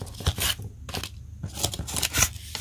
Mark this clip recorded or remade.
recorded